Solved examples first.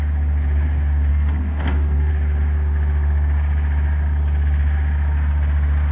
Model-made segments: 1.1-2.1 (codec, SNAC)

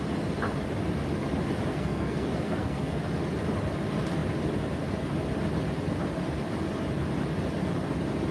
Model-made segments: 1.7-3.0 (codec, SNAC)

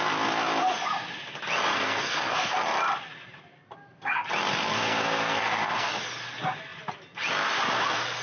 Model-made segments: 1.7-2.5 (codec, SNAC); 4.7-5.9

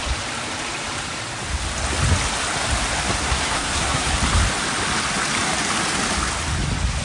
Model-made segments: 3.2-4.1 (codec, SNAC)

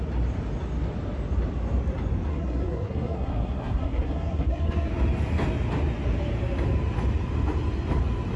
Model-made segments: 2.3-4.9 (codec, SNAC)

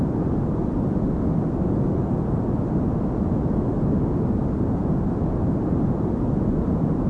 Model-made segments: none